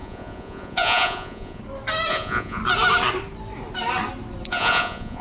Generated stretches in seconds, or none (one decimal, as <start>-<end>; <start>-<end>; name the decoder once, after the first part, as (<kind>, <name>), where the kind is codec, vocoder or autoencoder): 0.0-1.6 (vocoder, Vocos); 2.1-2.6; 4.5-5.2